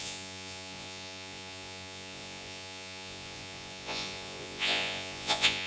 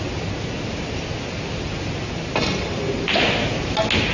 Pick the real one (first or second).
second